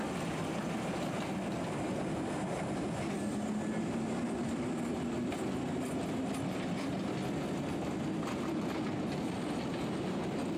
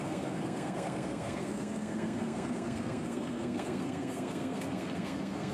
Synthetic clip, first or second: second